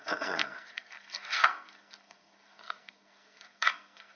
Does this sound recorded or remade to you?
remade